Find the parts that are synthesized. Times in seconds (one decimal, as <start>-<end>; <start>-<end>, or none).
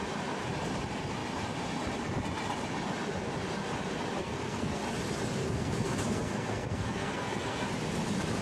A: 4.2-4.8; 5.4-7.7